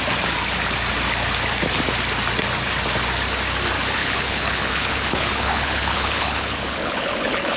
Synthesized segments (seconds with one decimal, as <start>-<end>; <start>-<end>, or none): 4.0-7.6